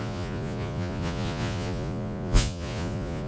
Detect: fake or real fake